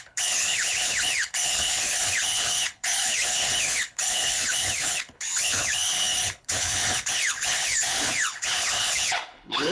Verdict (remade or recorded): remade